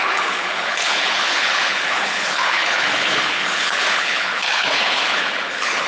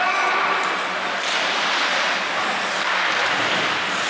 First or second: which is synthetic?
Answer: first